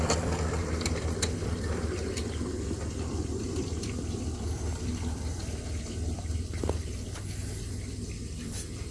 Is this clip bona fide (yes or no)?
no